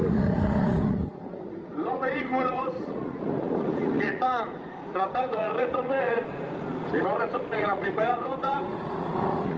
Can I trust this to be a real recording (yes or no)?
no